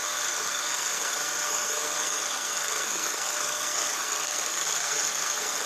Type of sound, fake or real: fake